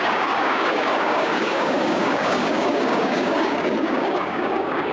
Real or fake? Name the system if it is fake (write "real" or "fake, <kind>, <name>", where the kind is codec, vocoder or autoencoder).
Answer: fake, codec, DAC